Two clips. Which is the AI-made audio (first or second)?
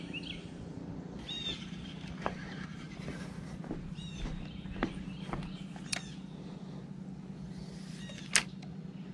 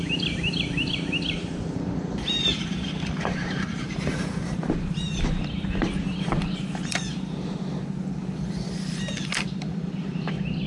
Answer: second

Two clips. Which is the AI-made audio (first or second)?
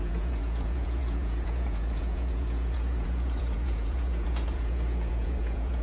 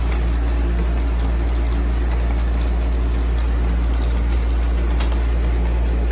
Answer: first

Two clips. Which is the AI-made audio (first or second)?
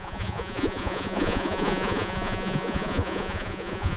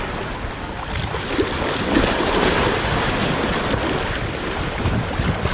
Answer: first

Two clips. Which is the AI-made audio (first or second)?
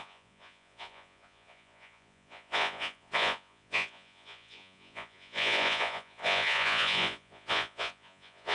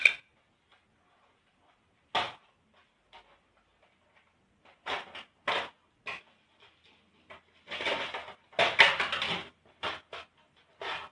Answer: first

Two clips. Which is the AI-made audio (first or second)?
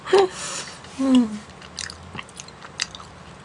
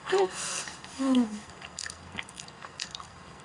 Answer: second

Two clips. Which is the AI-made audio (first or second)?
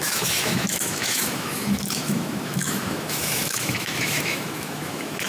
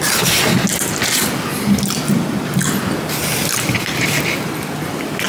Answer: first